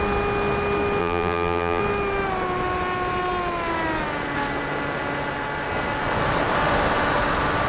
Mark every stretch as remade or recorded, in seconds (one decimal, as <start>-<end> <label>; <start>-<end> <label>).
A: 0.0-1.0 recorded; 1.0-1.8 remade; 1.8-7.7 recorded